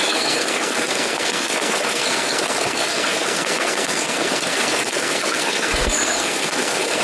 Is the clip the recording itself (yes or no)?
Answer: no